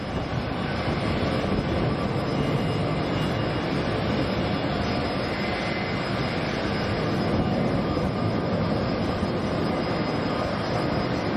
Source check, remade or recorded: recorded